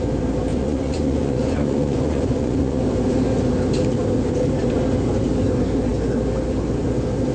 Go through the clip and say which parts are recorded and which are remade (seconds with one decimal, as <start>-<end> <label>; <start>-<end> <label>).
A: 0.0-0.5 recorded; 0.5-2.8 remade; 2.8-7.3 recorded